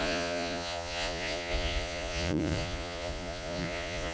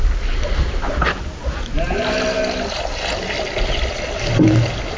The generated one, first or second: first